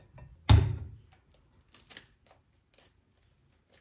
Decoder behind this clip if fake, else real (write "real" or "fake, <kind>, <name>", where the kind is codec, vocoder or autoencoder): real